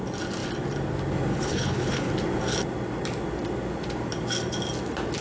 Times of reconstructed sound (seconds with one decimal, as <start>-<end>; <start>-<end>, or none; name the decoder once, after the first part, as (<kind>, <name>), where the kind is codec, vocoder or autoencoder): 1.3-2.1 (codec, HILCodec)